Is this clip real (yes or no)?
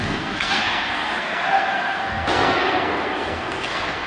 no